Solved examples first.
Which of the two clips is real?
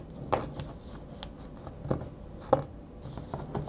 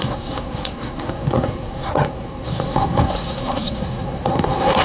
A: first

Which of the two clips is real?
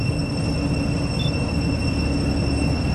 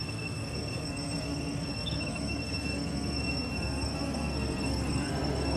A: first